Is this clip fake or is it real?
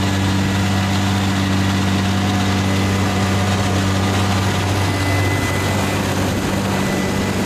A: real